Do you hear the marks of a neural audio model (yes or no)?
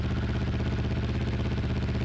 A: no